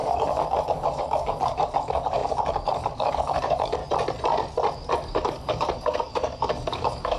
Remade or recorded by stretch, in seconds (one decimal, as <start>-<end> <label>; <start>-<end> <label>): 0.0-3.8 remade; 3.8-4.9 recorded; 4.9-7.2 remade

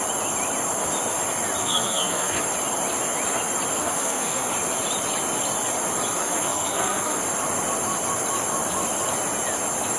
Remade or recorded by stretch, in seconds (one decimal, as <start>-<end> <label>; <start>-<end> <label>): 0.0-1.6 recorded; 1.6-2.4 remade; 2.4-3.7 recorded; 3.7-4.5 remade; 4.5-6.2 recorded; 6.2-7.2 remade; 7.2-10.0 recorded

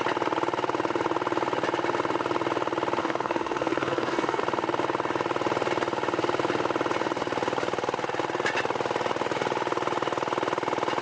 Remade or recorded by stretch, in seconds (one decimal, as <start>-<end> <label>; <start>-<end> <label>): 0.0-3.0 recorded; 3.0-4.4 remade; 4.4-11.0 recorded